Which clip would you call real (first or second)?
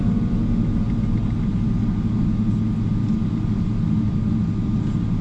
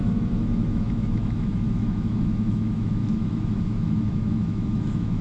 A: first